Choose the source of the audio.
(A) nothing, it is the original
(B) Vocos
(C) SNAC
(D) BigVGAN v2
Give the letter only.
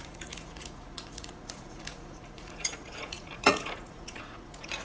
B